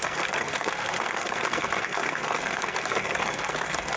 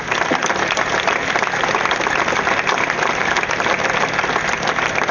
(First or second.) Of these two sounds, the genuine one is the second